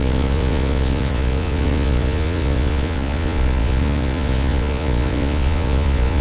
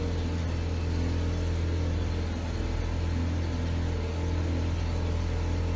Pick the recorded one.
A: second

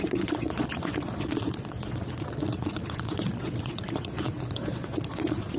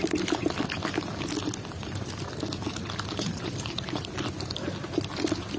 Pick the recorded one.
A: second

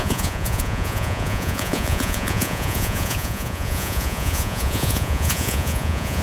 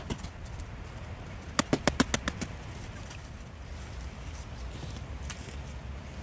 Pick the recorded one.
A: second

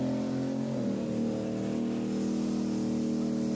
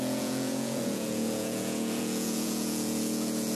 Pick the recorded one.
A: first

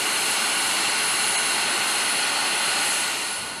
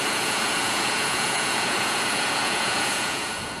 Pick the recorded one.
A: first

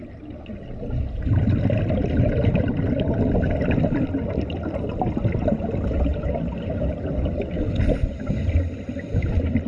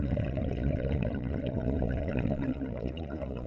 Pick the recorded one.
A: first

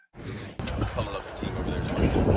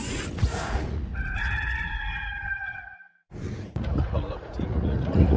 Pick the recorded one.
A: first